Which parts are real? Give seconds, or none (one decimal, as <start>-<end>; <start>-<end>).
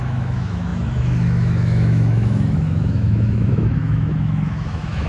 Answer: none